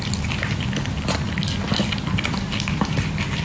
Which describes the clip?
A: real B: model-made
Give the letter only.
A